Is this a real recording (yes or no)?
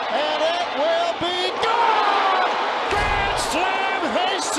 yes